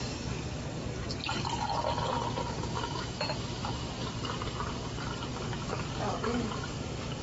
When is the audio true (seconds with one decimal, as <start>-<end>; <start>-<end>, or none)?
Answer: 1.0-5.3